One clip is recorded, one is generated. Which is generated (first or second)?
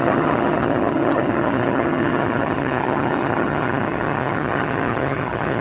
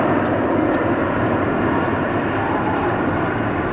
first